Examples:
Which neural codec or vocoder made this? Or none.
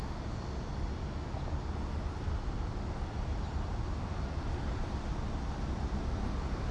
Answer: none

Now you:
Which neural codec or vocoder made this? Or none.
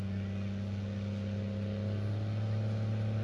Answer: none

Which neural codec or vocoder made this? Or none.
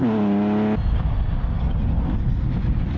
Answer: none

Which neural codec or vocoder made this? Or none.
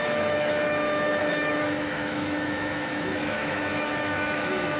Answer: autoencoder, DAC-VAE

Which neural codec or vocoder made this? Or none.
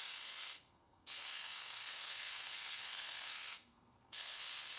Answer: codec, SNAC